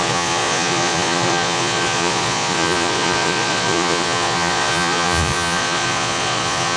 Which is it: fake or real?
fake